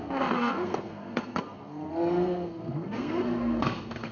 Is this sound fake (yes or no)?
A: yes